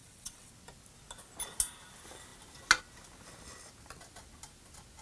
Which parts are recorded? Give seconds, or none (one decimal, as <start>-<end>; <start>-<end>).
0.5-5.0